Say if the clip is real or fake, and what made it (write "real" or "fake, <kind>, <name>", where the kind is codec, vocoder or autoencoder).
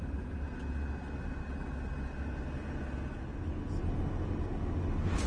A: real